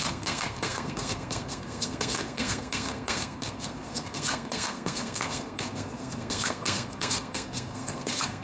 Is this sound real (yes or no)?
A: no